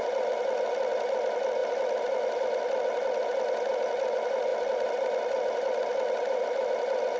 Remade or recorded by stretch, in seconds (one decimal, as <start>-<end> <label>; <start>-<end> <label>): 0.0-7.2 recorded